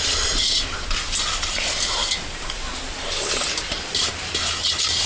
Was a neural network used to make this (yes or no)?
no